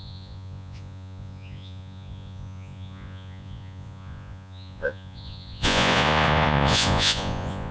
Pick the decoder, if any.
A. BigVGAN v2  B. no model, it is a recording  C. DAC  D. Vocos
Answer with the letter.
D